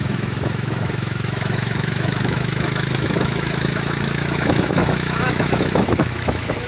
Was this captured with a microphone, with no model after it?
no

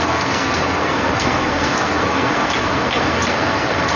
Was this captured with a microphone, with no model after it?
no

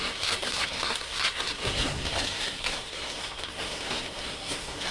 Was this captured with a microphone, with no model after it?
no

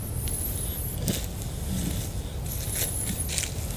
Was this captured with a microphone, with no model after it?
yes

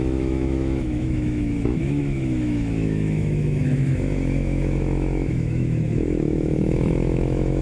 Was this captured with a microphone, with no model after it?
no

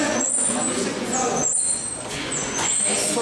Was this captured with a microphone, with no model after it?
no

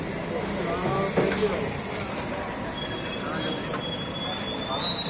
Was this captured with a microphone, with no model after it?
yes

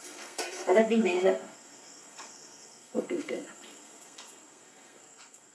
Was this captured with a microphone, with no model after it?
no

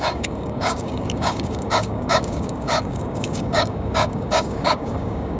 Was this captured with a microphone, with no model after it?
no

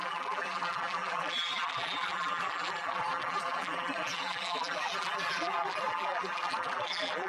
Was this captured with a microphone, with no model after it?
no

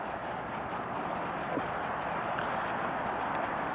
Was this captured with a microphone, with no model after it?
yes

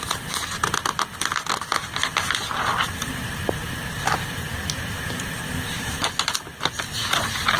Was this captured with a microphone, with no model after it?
yes